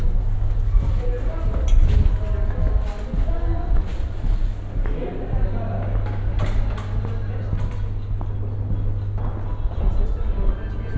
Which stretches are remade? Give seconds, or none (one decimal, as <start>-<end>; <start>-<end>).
none